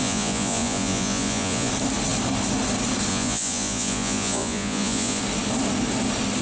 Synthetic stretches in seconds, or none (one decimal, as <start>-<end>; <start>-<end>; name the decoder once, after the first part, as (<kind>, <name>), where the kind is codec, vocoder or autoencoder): 0.0-1.7 (vocoder, Vocos); 3.1-5.2